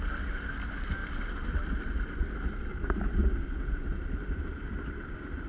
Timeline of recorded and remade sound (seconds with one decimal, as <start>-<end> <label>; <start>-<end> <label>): 0.0-1.0 recorded; 1.0-1.8 remade; 1.8-5.5 recorded